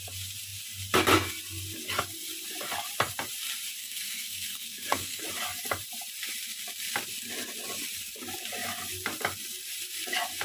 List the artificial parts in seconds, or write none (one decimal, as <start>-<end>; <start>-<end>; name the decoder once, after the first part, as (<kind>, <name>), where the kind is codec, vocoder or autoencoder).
3.8-5.2 (codec, SNAC)